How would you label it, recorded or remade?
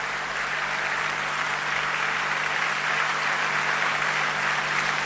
recorded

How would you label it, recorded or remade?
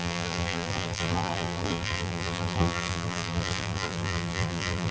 remade